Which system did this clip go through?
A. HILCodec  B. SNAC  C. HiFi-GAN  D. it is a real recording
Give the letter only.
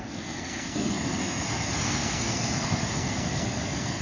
B